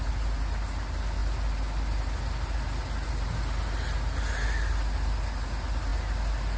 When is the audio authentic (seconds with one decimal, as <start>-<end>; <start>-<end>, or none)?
0.0-6.6